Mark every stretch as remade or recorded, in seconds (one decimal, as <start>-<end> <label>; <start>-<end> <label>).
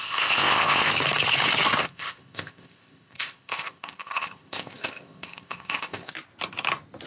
0.0-0.9 remade; 0.9-1.8 recorded; 1.8-6.1 remade; 6.1-7.1 recorded